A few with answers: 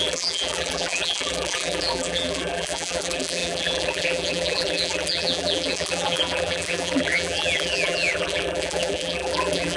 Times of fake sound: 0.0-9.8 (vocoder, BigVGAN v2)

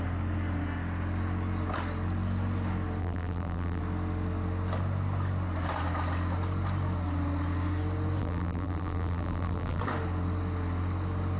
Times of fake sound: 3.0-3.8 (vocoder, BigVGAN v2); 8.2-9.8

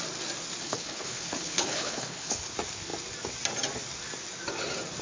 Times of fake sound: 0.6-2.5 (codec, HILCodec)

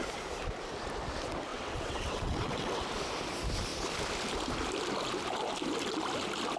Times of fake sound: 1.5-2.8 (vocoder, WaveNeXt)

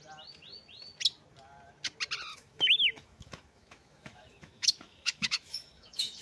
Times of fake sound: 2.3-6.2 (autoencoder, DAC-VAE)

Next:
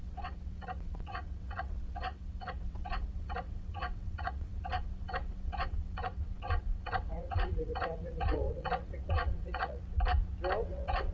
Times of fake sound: 0.0-9.8 (vocoder, WaveNeXt); 10.6-11.1

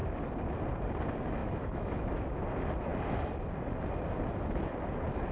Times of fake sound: 1.4-2.4 (autoencoder, DAC-VAE)